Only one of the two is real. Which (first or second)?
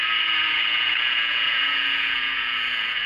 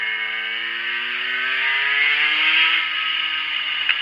second